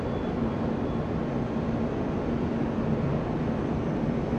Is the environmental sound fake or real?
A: real